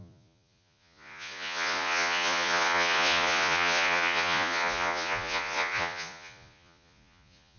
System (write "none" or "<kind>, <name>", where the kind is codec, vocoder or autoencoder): vocoder, Vocos